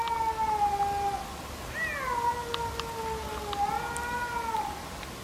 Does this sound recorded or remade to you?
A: recorded